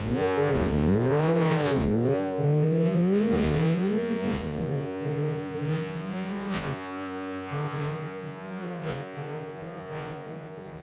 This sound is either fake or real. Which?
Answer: fake